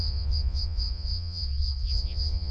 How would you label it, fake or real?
fake